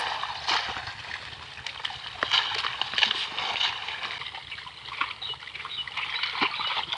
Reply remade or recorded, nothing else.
recorded